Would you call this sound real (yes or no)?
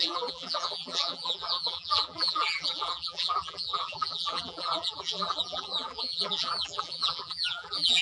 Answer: no